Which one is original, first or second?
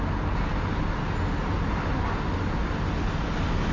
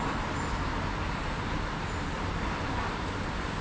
first